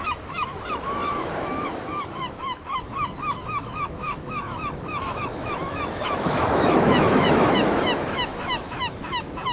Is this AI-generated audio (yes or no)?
yes